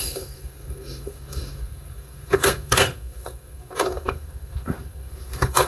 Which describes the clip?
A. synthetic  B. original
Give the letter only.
A